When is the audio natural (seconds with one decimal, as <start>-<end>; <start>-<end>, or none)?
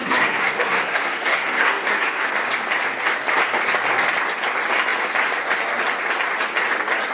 2.3-7.1